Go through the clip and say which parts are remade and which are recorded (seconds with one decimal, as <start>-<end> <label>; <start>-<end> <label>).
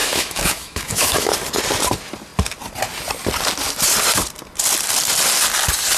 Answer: 0.0-1.3 remade; 1.3-6.0 recorded